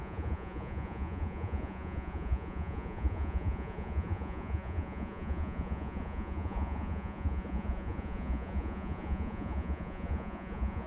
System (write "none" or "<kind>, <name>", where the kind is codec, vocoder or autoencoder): vocoder, Vocos